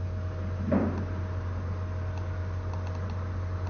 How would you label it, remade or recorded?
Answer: recorded